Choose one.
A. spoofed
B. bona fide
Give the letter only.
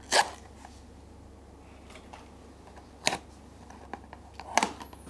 B